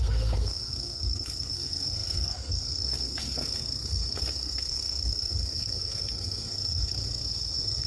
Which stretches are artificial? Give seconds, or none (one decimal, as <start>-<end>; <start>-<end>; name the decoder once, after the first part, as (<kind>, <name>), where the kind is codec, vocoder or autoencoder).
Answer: 0.0-7.9 (codec, SNAC)